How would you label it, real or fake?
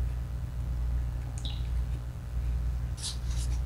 real